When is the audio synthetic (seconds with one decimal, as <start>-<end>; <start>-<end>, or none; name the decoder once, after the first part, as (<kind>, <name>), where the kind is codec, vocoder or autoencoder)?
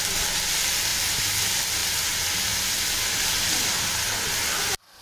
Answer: none